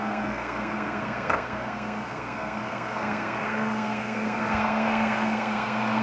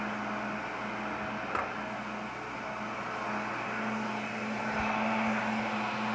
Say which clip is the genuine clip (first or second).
second